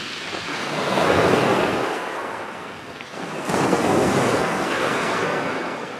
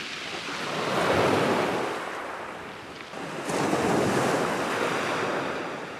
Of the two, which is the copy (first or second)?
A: first